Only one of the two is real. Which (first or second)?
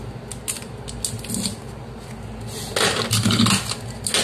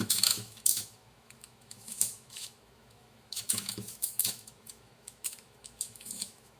first